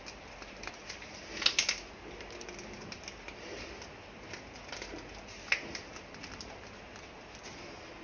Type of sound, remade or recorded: recorded